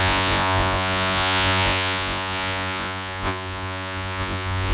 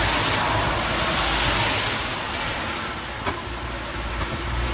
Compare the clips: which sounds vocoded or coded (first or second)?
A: first